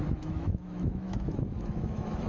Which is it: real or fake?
fake